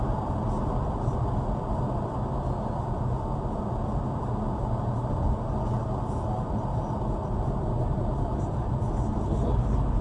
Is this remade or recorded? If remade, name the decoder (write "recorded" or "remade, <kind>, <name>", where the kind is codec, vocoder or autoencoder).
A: recorded